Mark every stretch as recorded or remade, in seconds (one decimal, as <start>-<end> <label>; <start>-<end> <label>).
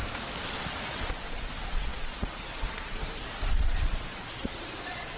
0.0-1.1 recorded; 1.1-5.2 remade